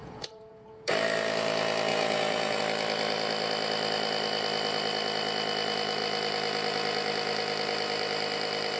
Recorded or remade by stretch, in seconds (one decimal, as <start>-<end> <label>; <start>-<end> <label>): 0.0-0.9 remade; 0.9-1.9 recorded; 1.9-2.6 remade; 2.6-8.8 recorded